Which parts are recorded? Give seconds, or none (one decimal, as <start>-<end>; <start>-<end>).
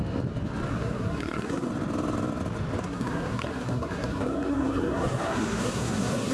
0.0-0.7; 1.7-2.8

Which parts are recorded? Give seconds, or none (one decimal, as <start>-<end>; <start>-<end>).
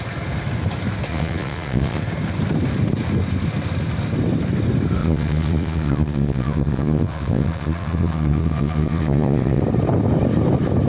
0.0-1.1; 2.0-5.0; 9.6-10.9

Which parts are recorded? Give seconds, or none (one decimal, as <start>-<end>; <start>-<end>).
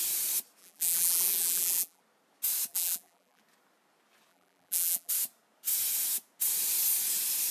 0.0-0.6; 2.0-2.7; 3.4-4.3; 5.1-7.5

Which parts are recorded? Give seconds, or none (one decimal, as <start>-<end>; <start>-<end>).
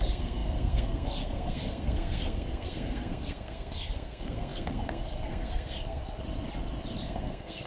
6.0-7.0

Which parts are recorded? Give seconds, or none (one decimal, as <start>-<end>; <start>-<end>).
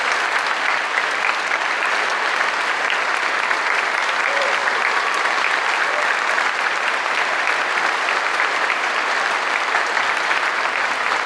none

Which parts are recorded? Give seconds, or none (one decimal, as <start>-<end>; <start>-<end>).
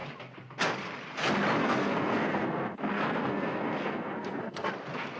0.0-1.6; 4.7-5.2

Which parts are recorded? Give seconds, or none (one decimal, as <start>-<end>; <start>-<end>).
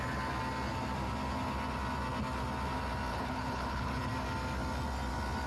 0.0-3.1; 4.1-5.5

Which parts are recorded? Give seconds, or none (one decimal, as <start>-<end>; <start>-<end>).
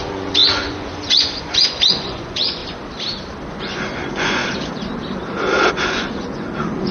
2.6-3.5; 4.4-5.7